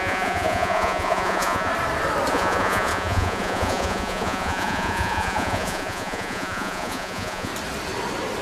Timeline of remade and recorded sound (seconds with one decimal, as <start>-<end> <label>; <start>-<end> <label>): 0.0-1.7 remade; 1.7-2.3 recorded; 2.3-7.5 remade; 7.5-8.4 recorded